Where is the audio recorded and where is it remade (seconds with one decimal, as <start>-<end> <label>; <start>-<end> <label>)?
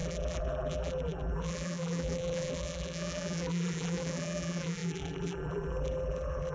0.0-6.5 remade